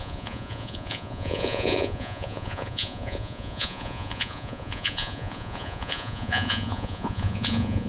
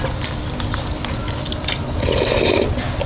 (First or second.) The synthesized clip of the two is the first